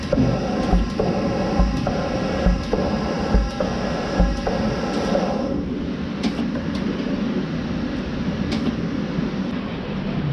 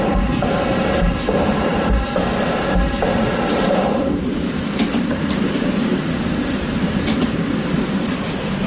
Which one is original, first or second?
first